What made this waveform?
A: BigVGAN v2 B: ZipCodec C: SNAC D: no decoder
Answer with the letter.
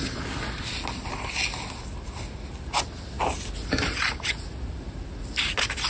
D